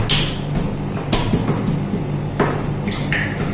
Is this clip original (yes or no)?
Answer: yes